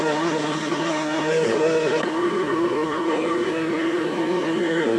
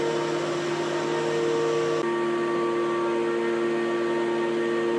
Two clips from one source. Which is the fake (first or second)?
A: first